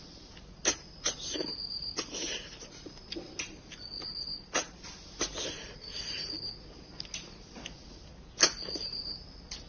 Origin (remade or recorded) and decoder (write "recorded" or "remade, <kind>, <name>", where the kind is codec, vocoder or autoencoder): recorded